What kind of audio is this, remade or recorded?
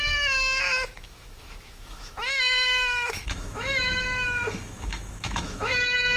remade